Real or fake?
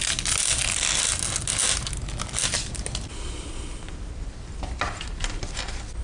real